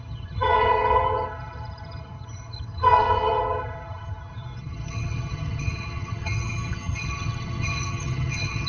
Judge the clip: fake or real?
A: fake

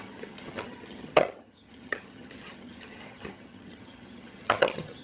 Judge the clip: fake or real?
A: fake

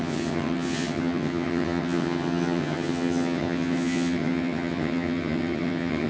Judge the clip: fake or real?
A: fake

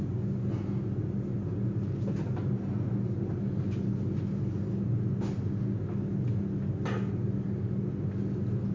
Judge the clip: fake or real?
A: real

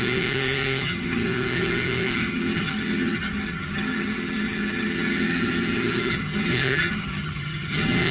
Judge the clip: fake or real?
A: fake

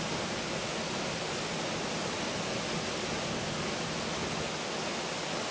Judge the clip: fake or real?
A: real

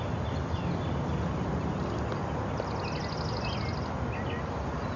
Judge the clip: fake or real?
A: real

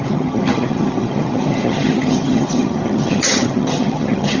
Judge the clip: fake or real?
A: fake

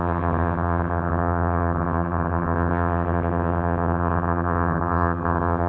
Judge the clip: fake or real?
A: fake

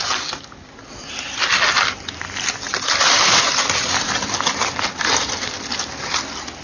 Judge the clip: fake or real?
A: real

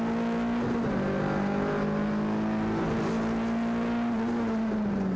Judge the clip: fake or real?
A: real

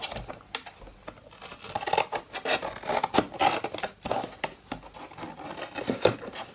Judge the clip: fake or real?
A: real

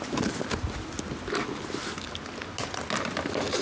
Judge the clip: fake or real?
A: real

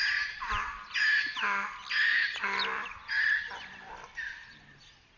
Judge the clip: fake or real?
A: real